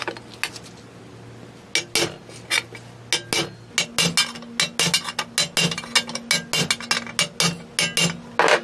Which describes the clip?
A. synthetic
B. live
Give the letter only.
B